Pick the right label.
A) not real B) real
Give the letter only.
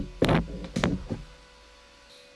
B